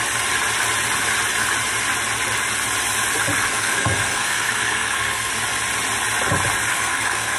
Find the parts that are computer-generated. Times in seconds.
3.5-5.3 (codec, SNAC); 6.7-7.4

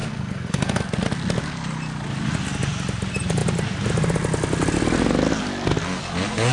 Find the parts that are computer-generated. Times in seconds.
0.0-0.8 (codec, SNAC)

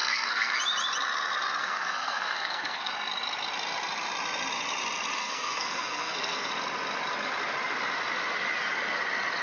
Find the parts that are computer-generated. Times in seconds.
0.0-0.6 (codec, SNAC); 1.6-2.9; 5.2-6.5

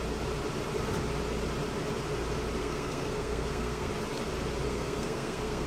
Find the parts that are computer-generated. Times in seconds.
2.6-3.9 (codec, SNAC); 4.7-5.7

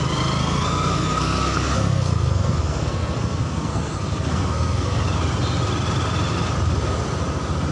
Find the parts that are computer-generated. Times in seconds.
0.4-5.0 (codec, SNAC)

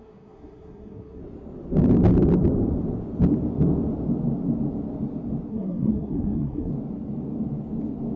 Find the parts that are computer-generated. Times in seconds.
0.0-1.2 (codec, SNAC); 5.5-6.7

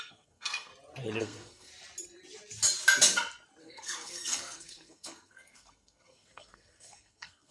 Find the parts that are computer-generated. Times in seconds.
0.0-0.7 (codec, SNAC); 1.2-1.7; 3.6-7.5